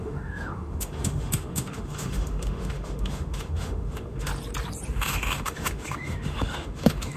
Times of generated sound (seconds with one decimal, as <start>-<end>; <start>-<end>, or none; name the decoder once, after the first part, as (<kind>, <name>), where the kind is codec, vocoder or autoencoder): 0.0-4.3 (autoencoder, DAC-VAE); 4.9-7.2